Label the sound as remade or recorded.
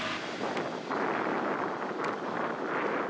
recorded